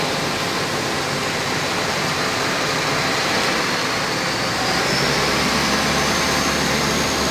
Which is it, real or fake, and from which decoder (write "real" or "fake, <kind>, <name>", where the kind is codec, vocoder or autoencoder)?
real